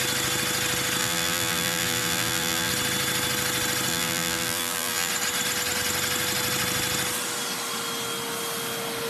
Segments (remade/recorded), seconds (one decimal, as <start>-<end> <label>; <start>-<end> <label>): 0.0-1.0 recorded; 1.0-2.7 remade; 2.7-3.9 recorded; 3.9-5.1 remade; 5.1-9.1 recorded